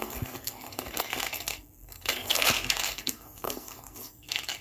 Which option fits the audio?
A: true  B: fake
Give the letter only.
B